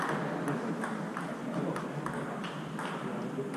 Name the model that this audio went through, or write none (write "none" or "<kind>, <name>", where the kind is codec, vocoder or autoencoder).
none